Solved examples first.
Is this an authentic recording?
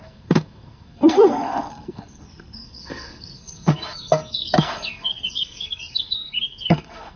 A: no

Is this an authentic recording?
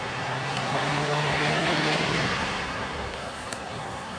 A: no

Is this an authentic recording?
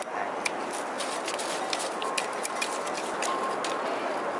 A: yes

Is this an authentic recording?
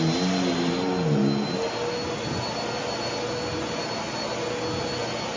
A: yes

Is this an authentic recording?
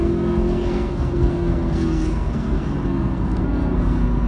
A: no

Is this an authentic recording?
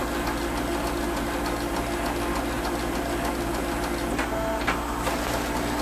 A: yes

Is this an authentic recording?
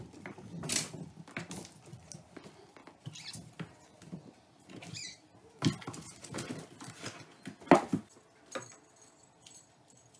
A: yes